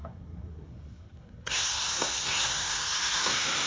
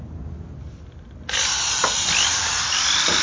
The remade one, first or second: first